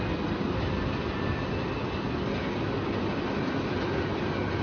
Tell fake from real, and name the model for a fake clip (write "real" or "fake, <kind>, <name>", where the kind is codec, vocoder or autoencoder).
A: real